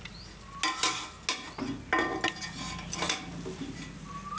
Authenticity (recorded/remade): recorded